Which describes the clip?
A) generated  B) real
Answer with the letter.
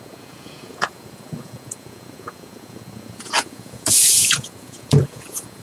A